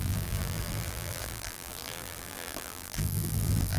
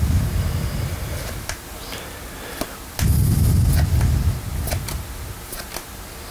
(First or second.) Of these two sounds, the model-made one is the first